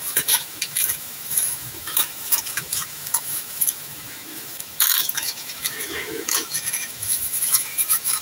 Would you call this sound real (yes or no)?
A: no